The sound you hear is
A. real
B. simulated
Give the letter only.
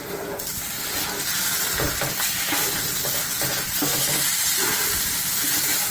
A